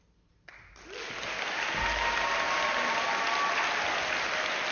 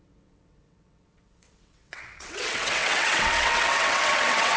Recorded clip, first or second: first